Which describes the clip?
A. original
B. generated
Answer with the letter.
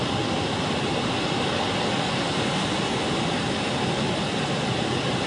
A